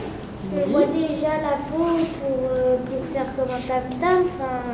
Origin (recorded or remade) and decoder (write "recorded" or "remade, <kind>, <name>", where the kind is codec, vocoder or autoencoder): recorded